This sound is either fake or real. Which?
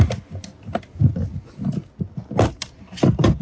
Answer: real